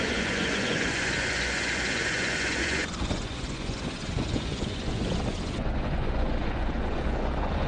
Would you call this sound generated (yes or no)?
yes